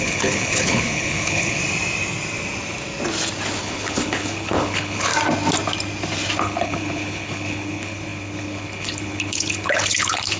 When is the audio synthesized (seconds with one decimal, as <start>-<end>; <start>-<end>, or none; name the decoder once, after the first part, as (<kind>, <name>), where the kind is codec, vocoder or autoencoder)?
0.0-1.6 (codec, HILCodec); 3.6-5.1; 6.4-10.4